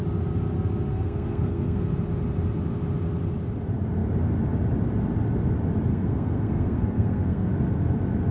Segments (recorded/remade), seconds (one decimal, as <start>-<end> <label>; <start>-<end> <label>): 0.0-0.9 recorded; 0.9-1.8 remade; 1.8-5.9 recorded; 5.9-7.5 remade; 7.5-8.3 recorded

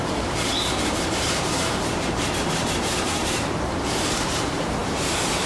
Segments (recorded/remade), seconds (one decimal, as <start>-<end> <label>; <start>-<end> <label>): 0.0-5.5 remade

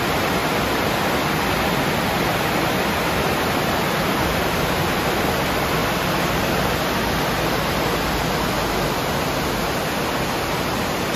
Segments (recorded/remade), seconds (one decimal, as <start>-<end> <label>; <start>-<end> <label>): 0.0-11.2 recorded